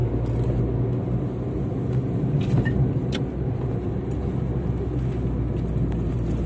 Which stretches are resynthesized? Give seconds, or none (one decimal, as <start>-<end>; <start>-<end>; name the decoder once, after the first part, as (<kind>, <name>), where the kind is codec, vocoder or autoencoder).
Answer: none